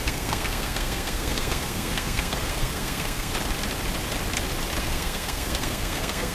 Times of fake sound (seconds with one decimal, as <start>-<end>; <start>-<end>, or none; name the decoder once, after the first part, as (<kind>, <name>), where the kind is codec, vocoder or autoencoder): 0.0-3.3 (codec, SNAC); 4.8-6.3